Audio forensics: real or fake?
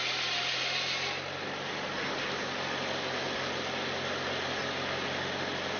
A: real